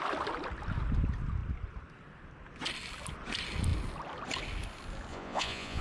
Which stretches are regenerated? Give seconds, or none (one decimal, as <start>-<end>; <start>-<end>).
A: 5.1-5.8